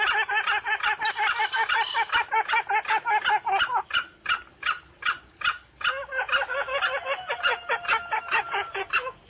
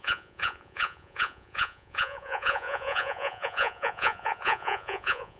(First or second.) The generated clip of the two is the second